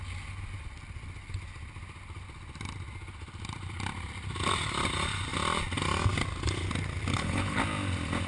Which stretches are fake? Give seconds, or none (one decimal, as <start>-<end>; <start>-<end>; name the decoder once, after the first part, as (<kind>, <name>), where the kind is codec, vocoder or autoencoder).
7.1-7.6 (codec, HILCodec)